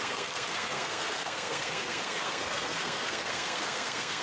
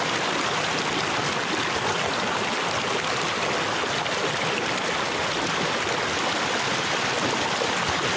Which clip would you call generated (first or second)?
first